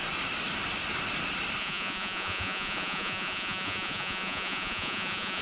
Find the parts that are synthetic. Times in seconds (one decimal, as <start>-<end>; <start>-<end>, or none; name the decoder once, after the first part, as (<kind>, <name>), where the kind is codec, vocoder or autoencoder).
1.6-5.4 (vocoder, Vocos)